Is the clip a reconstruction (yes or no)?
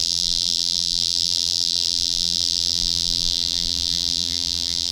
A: yes